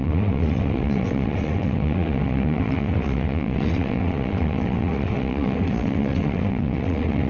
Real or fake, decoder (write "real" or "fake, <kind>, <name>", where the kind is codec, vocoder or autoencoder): fake, vocoder, WaveNeXt